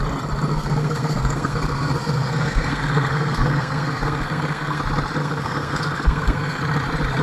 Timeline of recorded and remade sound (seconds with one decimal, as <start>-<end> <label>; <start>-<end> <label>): 0.0-0.5 recorded; 0.5-4.8 remade; 4.8-5.2 recorded; 5.2-6.6 remade; 6.6-7.2 recorded